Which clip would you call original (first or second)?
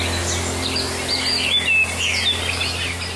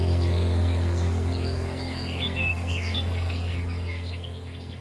first